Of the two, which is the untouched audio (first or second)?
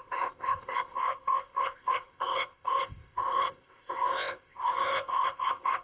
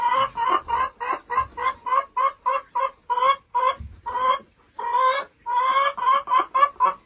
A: second